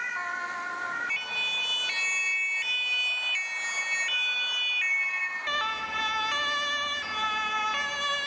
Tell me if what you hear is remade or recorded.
recorded